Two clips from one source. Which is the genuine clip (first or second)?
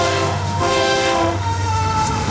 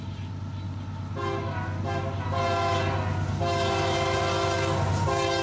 second